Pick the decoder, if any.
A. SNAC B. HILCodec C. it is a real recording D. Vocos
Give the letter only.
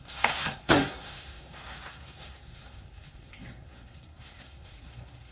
A